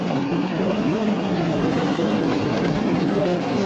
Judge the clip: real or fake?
fake